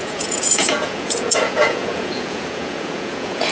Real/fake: fake